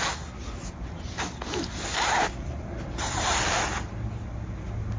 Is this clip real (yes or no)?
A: yes